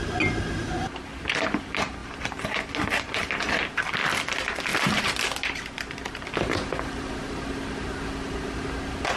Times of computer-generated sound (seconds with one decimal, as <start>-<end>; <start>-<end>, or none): 2.0-2.7; 4.7-8.1